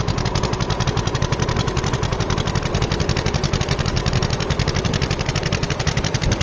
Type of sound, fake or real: fake